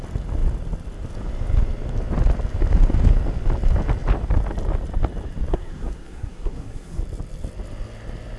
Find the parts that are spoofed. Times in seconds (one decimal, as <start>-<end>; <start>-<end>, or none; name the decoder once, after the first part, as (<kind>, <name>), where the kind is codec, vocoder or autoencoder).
5.5-7.0 (codec, SNAC)